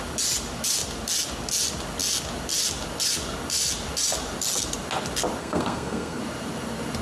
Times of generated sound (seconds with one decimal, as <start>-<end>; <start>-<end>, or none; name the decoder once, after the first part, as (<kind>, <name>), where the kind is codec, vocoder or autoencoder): 5.4-6.2 (codec, SNAC)